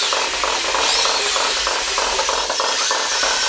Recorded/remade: recorded